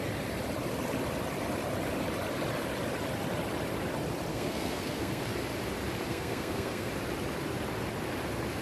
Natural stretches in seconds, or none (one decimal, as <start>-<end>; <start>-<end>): 0.0-4.3; 5.2-6.1; 6.9-8.6